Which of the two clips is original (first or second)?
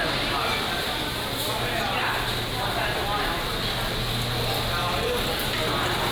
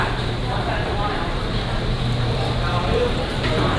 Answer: first